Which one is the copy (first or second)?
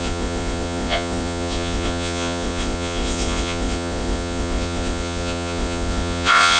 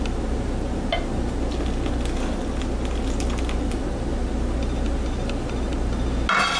first